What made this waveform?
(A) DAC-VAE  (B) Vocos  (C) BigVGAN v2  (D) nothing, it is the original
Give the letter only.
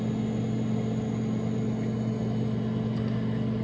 D